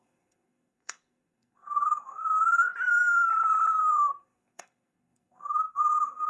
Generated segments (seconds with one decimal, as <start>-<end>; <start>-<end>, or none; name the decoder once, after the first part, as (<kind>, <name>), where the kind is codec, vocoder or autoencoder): 0.0-2.7 (codec, SNAC); 3.8-6.3